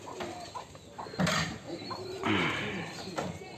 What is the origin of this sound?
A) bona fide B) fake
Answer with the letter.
A